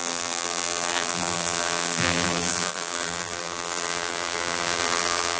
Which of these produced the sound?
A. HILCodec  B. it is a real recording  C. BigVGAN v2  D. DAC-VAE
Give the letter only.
C